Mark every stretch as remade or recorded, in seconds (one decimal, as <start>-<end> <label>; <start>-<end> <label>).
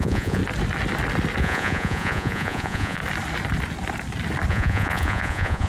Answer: 0.0-0.4 remade; 0.4-1.4 recorded; 1.4-3.0 remade; 3.0-4.5 recorded; 4.5-5.7 remade